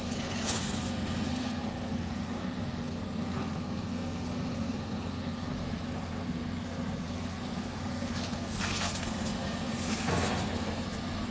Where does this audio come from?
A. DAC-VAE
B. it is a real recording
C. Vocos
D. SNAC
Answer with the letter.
D